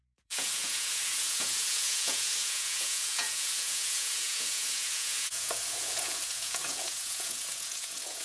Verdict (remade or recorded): remade